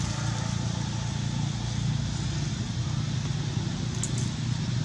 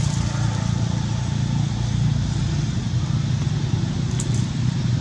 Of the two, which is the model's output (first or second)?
second